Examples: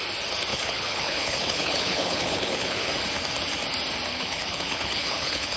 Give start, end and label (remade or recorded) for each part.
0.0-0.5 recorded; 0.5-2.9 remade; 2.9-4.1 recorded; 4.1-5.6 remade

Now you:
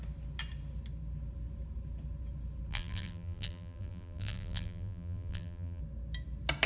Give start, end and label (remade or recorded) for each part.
0.0-2.7 recorded; 2.7-5.8 remade; 5.8-6.7 recorded

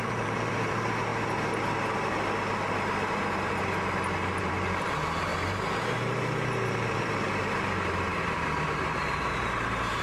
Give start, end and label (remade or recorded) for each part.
0.0-1.1 remade; 1.1-4.4 recorded; 4.4-5.3 remade; 5.3-6.9 recorded; 6.9-10.0 remade

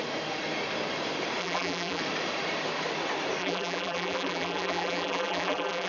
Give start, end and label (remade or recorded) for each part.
0.0-1.4 recorded; 1.4-2.0 remade; 2.0-3.4 recorded; 3.4-5.9 remade

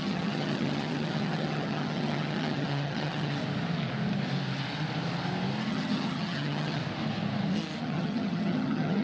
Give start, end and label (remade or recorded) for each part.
0.0-3.4 remade; 3.4-5.7 recorded; 5.7-6.8 remade; 6.8-7.8 recorded; 7.8-9.0 remade

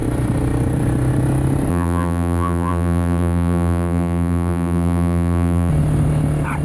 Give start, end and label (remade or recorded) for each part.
0.0-1.7 recorded; 1.7-5.7 remade; 5.7-6.6 recorded